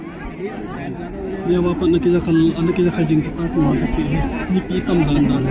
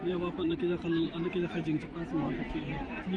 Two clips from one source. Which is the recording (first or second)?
first